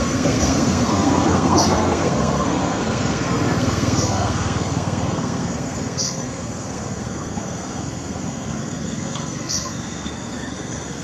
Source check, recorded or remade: remade